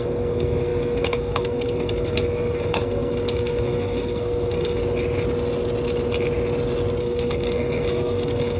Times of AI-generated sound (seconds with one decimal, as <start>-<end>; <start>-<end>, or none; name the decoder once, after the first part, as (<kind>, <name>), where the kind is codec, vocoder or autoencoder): 0.0-4.8 (codec, SNAC); 7.0-8.6